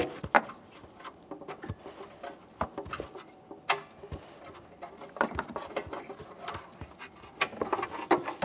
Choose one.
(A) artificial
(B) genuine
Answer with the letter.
B